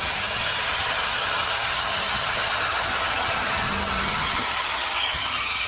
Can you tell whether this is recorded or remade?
remade